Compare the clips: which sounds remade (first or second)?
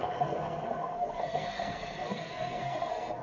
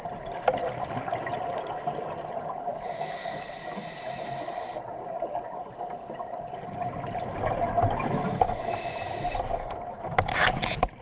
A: first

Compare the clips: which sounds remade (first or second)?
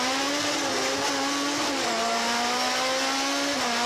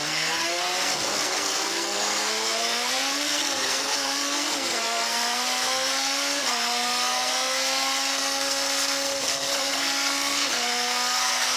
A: second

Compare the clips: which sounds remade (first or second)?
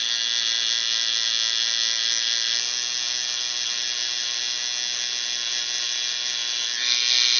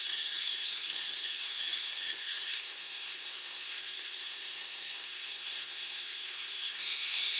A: second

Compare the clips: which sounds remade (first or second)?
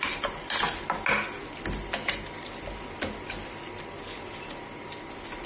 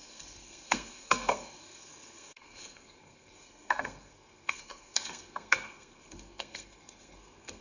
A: second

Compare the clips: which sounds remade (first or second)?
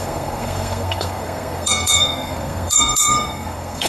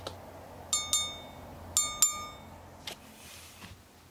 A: first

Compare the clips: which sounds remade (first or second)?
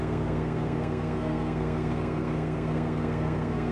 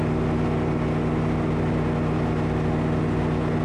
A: first